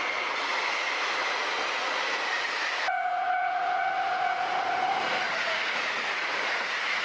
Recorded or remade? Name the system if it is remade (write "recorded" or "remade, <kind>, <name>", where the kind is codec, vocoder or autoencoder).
remade, vocoder, Vocos